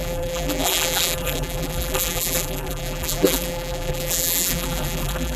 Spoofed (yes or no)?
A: yes